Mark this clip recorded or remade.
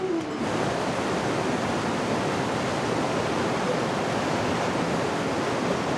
recorded